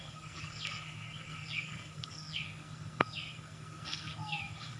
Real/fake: fake